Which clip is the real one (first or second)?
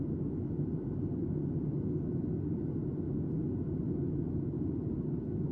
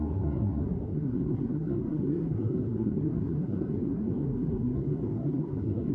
first